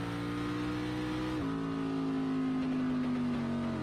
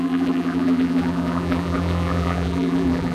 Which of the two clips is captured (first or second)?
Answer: first